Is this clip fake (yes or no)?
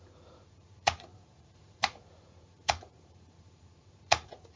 yes